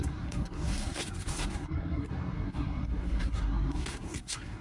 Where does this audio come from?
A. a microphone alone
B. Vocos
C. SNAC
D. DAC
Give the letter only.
C